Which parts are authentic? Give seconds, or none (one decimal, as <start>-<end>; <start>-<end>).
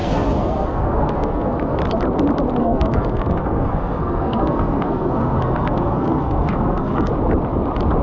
1.8-2.6; 7.1-8.0